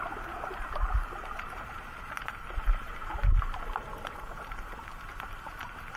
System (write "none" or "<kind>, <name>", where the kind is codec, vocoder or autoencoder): vocoder, BigVGAN v2